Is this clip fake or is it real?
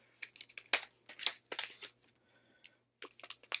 real